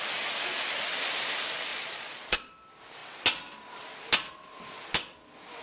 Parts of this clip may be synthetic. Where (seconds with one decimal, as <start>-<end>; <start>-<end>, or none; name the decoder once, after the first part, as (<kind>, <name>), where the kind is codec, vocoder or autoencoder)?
1.7-2.5 (vocoder, Vocos)

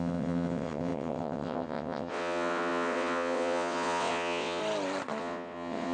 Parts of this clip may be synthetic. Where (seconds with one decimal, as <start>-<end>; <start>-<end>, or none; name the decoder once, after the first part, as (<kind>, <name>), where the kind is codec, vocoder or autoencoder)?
0.0-4.6 (vocoder, WaveNeXt); 5.2-5.9

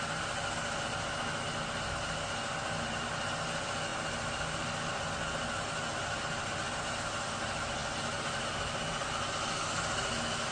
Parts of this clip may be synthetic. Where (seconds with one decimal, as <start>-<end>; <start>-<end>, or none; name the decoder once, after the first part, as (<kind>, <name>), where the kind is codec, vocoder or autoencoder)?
none

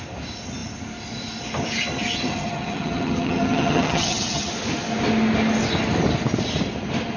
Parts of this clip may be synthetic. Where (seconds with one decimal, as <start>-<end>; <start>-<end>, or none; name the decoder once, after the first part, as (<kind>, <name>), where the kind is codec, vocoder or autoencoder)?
2.3-4.5 (vocoder, HiFi-GAN)

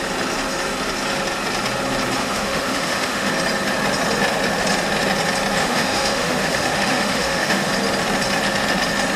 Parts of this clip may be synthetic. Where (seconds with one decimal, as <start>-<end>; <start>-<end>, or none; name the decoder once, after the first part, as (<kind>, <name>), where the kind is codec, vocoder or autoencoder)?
2.2-3.3 (autoencoder, DAC-VAE); 5.6-7.7